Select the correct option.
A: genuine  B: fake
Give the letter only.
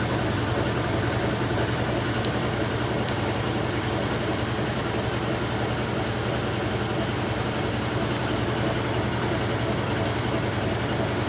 A